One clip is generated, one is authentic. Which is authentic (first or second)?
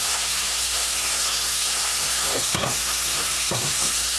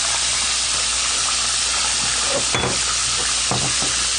second